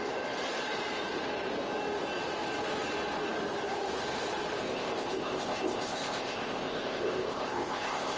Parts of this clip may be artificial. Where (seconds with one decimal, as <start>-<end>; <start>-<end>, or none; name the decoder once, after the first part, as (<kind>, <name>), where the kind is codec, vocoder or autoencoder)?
4.6-8.2 (codec, ZipCodec)